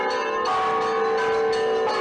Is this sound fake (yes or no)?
no